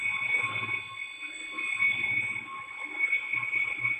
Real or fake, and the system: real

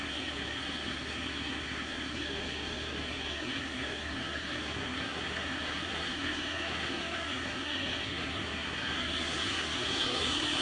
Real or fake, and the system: fake, codec, SNAC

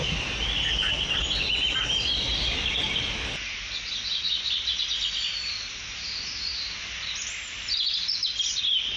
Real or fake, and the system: real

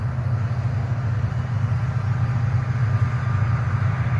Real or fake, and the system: real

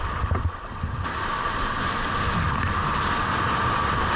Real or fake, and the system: real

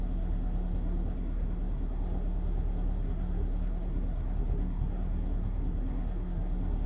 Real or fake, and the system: fake, codec, SNAC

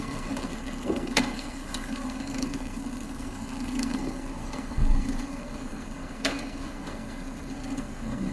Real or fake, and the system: fake, codec, SNAC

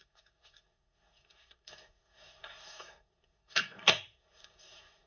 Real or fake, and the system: fake, codec, SNAC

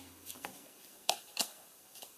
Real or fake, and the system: fake, codec, SNAC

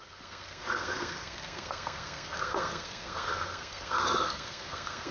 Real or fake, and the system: fake, codec, SNAC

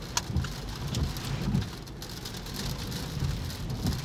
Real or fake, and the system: real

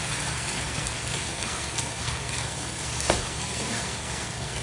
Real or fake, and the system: fake, codec, SNAC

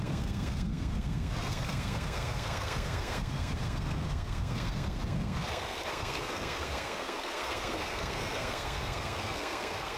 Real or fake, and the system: fake, codec, SNAC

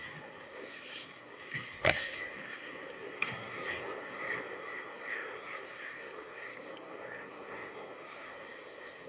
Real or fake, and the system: fake, codec, SNAC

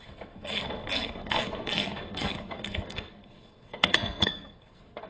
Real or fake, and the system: fake, codec, SNAC